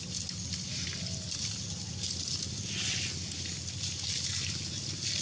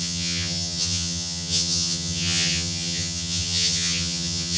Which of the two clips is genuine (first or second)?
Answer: first